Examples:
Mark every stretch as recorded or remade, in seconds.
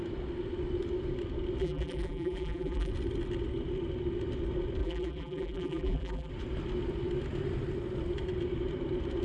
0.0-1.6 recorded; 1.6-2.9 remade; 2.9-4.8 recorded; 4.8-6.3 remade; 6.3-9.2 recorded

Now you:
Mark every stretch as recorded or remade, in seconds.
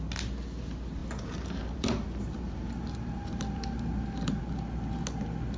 0.0-1.0 recorded; 1.0-4.4 remade; 4.4-5.6 recorded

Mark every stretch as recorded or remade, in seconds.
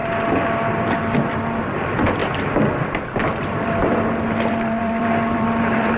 0.0-1.0 recorded; 1.0-2.2 remade; 2.2-3.0 recorded; 3.0-6.0 remade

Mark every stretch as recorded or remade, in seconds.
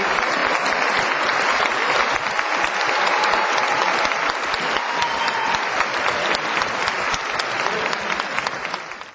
0.0-9.1 recorded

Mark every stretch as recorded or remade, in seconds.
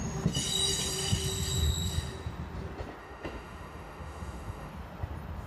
0.0-3.0 recorded; 3.0-4.7 remade; 4.7-5.5 recorded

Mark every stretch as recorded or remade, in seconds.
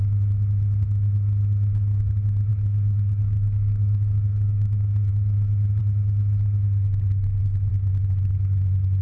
0.0-2.5 recorded; 2.5-5.1 remade; 5.1-9.0 recorded